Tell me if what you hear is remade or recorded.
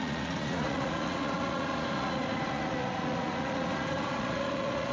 remade